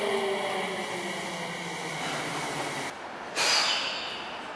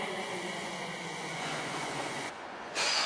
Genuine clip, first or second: first